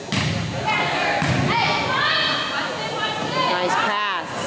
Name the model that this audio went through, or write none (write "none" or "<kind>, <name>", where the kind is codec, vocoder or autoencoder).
none